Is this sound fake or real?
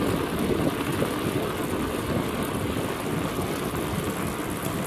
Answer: real